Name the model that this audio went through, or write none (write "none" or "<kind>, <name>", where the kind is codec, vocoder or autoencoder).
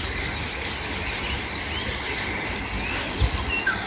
none